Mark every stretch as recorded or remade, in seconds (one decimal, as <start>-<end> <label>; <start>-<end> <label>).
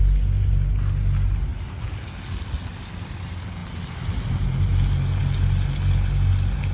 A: 0.0-6.7 recorded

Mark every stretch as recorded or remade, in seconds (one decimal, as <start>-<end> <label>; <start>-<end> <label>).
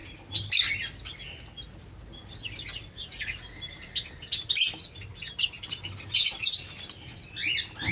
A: 0.0-7.9 recorded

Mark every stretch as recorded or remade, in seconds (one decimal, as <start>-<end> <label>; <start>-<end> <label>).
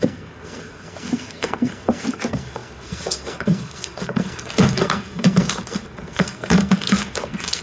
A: 0.0-7.6 remade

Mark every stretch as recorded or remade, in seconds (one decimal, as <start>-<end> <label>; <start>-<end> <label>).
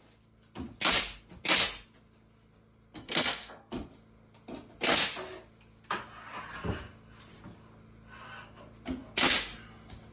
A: 0.0-3.0 recorded; 3.0-3.7 remade; 3.7-10.1 recorded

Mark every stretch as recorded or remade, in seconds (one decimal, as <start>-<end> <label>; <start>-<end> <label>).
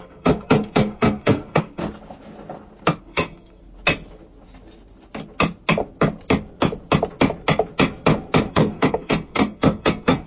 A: 0.0-1.8 remade; 1.8-3.0 recorded; 3.0-3.6 remade; 3.6-8.5 recorded; 8.5-10.3 remade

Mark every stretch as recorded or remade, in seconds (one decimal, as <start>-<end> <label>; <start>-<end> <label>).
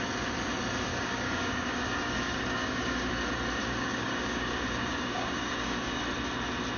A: 0.0-0.9 recorded; 0.9-3.1 remade; 3.1-3.6 recorded; 3.6-6.0 remade; 6.0-6.8 recorded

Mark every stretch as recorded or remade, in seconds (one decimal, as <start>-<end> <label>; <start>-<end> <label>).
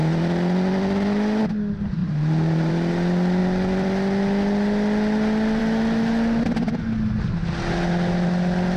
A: 0.0-2.0 recorded; 2.0-2.7 remade; 2.7-8.8 recorded